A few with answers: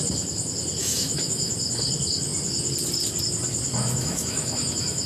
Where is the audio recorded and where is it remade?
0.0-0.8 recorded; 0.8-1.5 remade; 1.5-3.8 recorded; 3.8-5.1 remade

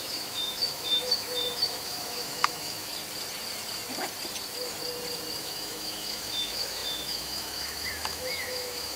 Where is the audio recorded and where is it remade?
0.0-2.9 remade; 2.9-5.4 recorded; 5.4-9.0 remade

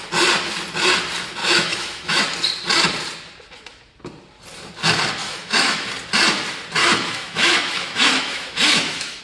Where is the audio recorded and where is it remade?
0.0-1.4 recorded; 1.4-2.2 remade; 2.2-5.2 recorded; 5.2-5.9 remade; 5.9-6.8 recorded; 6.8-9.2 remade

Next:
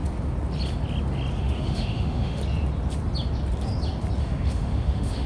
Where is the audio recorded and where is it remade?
0.0-1.4 recorded; 1.4-2.4 remade; 2.4-4.2 recorded; 4.2-5.3 remade

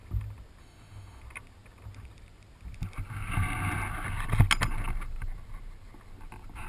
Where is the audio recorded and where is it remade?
0.0-0.6 recorded; 0.6-1.2 remade; 1.2-6.7 recorded

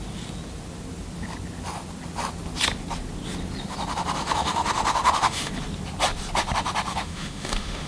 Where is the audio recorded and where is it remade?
0.0-4.2 recorded; 4.2-5.5 remade; 5.5-6.9 recorded; 6.9-7.9 remade

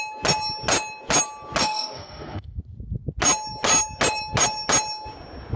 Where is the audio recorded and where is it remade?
0.0-1.6 recorded; 1.6-2.6 remade; 2.6-5.6 recorded